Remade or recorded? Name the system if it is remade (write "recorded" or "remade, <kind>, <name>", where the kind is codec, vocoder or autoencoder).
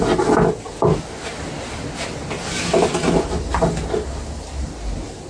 recorded